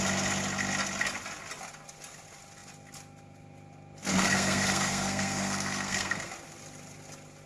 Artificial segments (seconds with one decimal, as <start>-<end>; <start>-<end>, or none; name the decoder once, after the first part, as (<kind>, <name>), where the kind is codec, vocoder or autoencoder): 4.1-6.3 (codec, SNAC)